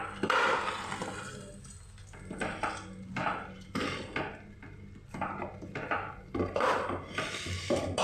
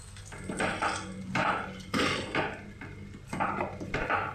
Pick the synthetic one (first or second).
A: second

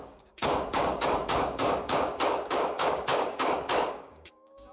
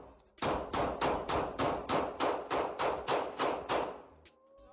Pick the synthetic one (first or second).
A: first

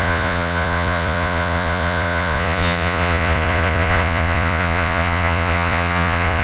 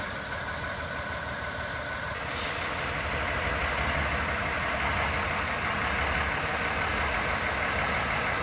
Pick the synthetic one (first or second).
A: first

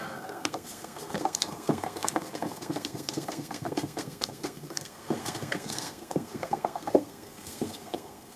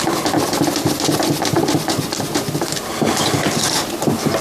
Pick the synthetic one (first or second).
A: first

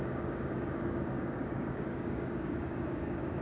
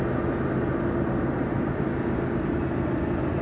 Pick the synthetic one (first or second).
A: first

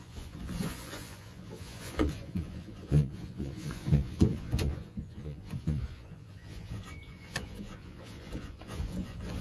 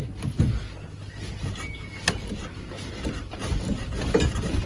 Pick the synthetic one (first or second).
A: first